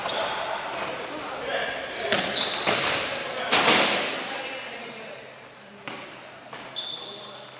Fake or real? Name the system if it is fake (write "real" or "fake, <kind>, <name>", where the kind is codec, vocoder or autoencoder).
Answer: real